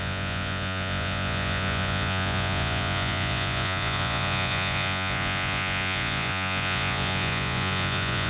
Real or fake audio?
fake